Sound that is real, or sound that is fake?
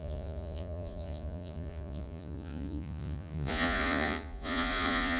fake